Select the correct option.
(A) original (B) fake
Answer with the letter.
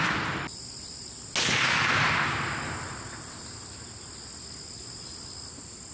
A